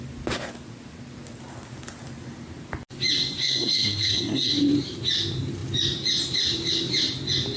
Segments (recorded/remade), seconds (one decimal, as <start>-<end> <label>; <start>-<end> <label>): 0.0-3.4 recorded; 3.4-4.5 remade; 4.5-7.6 recorded